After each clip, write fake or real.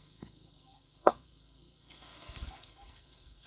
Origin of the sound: fake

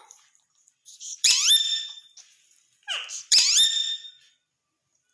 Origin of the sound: fake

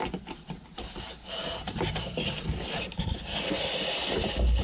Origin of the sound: real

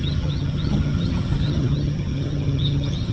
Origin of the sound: fake